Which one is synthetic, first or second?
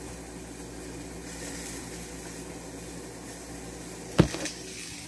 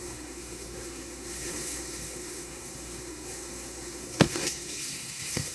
second